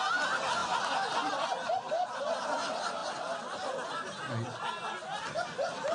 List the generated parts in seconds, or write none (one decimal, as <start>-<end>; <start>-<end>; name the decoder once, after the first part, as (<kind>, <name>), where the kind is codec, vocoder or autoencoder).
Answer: none